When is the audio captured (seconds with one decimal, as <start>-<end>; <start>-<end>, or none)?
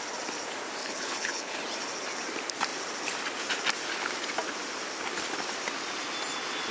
0.0-0.8; 1.6-6.7